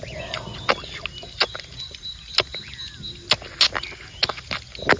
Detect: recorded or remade recorded